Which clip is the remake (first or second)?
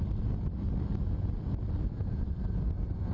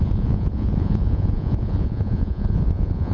second